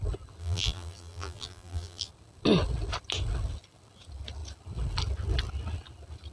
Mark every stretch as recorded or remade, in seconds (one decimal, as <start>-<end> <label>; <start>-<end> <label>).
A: 0.0-0.4 recorded; 0.4-2.1 remade; 2.1-6.3 recorded